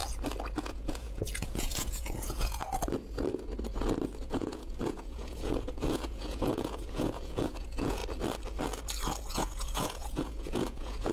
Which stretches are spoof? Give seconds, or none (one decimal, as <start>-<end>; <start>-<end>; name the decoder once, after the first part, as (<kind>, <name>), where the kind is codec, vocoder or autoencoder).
0.6-2.6 (vocoder, Vocos); 4.2-8.0; 9.3-11.1

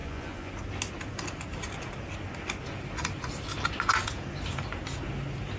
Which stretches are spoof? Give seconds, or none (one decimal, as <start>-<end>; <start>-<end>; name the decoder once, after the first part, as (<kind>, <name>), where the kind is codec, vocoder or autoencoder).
0.0-0.5 (vocoder, Vocos)

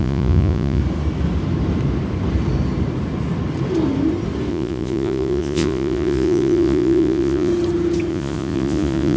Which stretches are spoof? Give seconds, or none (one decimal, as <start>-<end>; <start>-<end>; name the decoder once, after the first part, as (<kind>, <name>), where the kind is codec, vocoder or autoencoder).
0.0-0.8 (vocoder, Vocos); 4.5-7.5; 8.1-9.2

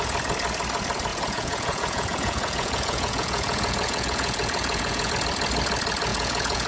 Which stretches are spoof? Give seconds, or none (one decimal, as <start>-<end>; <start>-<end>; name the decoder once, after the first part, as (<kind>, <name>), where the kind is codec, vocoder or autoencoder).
1.1-5.1 (vocoder, Vocos); 6.1-6.7

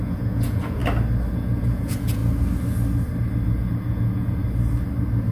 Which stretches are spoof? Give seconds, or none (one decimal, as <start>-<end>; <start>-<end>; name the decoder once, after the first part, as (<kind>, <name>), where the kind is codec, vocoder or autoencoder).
0.0-0.8 (vocoder, Vocos); 1.3-2.2; 3.5-4.4